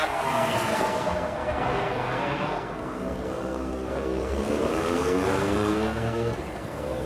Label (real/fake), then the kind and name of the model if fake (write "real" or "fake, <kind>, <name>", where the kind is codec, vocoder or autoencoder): fake, codec, SNAC